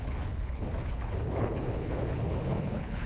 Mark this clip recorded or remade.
remade